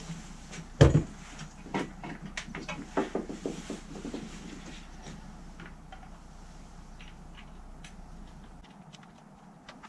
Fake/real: real